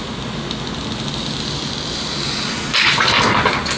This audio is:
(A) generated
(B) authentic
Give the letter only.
B